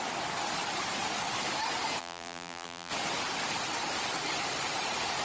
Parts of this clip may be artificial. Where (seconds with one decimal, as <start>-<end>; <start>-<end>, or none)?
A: 2.0-2.9